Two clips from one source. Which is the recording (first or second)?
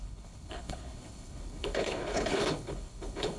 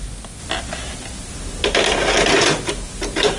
second